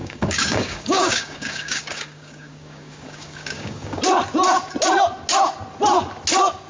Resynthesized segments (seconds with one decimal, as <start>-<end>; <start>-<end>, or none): 0.0-4.0